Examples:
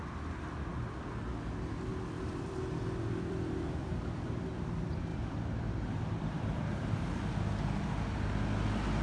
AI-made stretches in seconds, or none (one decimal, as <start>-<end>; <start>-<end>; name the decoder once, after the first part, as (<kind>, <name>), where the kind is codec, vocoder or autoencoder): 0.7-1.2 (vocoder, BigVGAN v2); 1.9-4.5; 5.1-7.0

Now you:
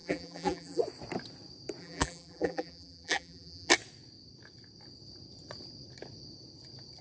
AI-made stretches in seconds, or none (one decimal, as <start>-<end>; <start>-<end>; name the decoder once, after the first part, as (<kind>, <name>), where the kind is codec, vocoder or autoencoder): 0.0-0.8 (vocoder, BigVGAN v2); 1.8-3.7

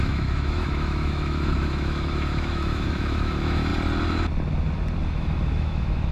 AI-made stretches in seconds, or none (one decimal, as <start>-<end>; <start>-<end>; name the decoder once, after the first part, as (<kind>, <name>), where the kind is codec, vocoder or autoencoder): 0.0-3.7 (autoencoder, DAC-VAE); 5.0-6.1

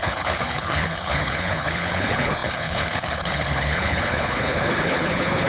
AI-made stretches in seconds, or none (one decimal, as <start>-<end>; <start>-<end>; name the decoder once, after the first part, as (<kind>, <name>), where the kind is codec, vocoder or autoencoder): 0.0-5.5 (codec, HILCodec)

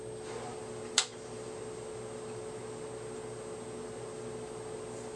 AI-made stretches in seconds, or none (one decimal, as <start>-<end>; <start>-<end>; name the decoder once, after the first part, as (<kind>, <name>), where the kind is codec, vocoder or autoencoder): none